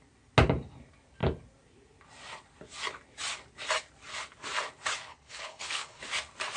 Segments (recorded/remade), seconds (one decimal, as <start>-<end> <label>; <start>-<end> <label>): 0.0-5.1 recorded; 5.1-6.0 remade; 6.0-6.6 recorded